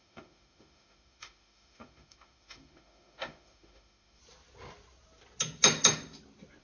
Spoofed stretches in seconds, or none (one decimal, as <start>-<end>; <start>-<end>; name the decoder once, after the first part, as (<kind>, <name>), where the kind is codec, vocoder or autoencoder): 0.0-4.2 (autoencoder, DAC-VAE)

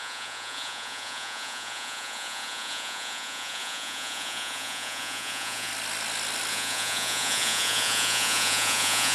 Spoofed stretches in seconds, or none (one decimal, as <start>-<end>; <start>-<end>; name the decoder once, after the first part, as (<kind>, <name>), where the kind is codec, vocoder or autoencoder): 0.0-5.7 (vocoder, Vocos); 6.5-9.1

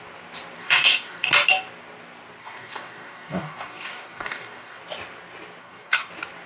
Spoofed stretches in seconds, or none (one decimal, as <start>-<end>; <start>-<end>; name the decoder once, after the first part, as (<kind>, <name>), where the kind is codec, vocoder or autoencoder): 0.6-1.3 (codec, DAC); 2.4-4.8; 5.6-6.1